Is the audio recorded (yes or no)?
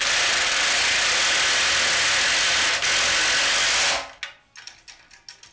yes